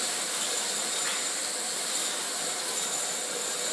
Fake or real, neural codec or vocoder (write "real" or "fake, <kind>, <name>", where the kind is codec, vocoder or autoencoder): real